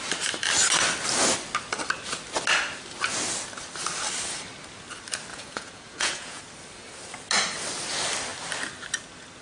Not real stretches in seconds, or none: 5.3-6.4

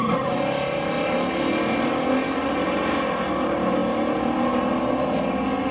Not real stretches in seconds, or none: none

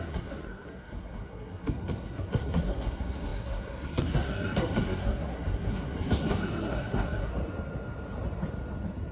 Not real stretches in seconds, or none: 0.0-7.3

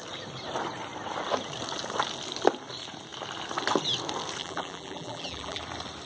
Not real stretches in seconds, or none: 4.4-5.6

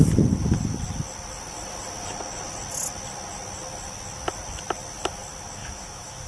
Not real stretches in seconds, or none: 5.6-6.3

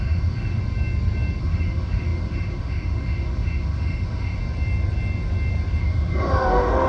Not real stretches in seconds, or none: 0.0-0.6; 1.4-4.4; 5.8-6.9

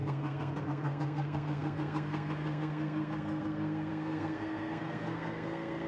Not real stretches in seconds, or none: 0.0-5.9